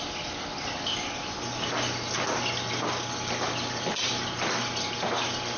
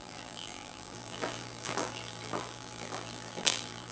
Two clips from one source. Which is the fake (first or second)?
second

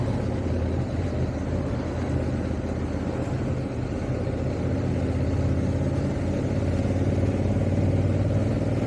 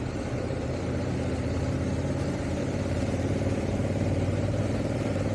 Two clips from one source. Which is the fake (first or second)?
second